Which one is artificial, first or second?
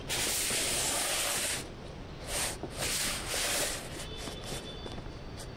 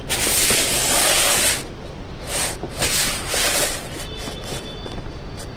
first